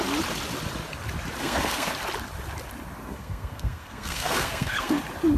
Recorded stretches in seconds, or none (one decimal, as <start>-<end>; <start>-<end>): 0.0-1.4; 1.9-3.0; 5.0-5.4